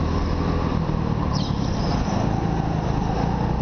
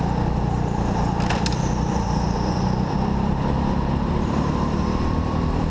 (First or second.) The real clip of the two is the first